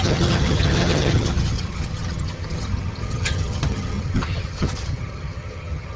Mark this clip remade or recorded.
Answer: remade